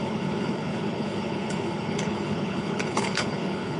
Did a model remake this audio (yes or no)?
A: yes